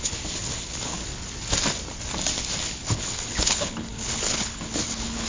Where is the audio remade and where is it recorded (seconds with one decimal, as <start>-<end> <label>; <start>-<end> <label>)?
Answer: 0.0-1.0 remade; 1.0-2.7 recorded; 2.7-5.3 remade